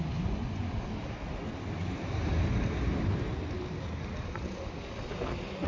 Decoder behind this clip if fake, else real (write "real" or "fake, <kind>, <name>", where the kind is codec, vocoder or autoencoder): real